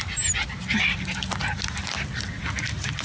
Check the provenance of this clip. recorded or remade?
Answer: recorded